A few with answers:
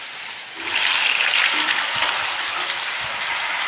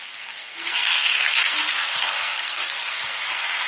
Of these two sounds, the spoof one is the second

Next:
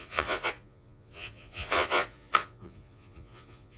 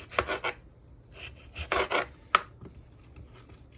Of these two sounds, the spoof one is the first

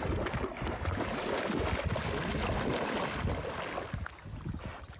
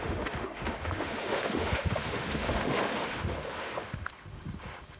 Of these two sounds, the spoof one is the second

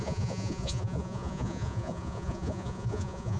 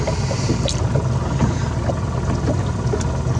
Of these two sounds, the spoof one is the first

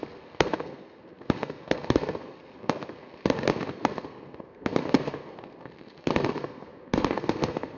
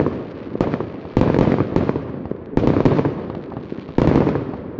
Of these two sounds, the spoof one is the first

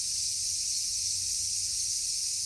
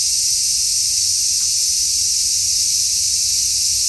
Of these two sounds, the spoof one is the second